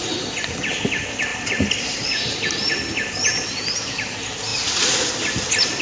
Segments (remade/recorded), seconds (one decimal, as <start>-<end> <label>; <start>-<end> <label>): 0.0-4.5 recorded; 4.5-5.1 remade; 5.1-5.8 recorded